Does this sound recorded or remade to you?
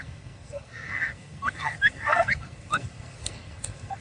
remade